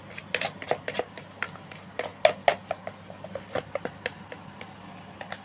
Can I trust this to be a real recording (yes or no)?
yes